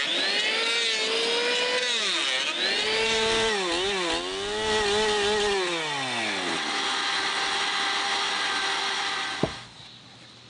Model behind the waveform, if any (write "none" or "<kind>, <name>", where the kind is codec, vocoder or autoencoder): none